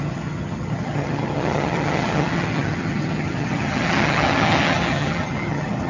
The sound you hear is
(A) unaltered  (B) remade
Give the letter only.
B